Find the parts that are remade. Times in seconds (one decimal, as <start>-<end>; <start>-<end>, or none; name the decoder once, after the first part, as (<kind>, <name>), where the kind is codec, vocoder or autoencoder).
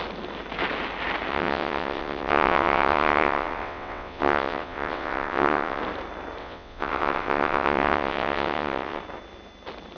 1.3-5.8 (vocoder, WaveNeXt); 6.4-9.0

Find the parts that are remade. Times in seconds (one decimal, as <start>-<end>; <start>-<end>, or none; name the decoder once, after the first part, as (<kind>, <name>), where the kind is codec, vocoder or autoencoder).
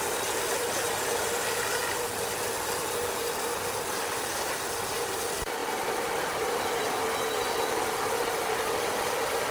5.6-6.6 (vocoder, BigVGAN v2)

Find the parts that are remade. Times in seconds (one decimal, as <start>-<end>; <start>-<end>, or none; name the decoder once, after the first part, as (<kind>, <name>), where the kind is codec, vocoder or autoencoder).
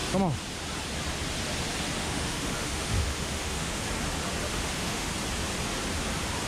2.0-3.8 (autoencoder, DAC-VAE); 4.5-5.1